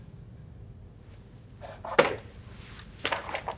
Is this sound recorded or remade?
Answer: recorded